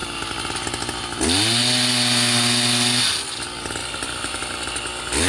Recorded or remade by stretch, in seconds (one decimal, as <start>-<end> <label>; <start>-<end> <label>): 0.0-3.8 recorded; 3.8-4.4 remade; 4.4-5.3 recorded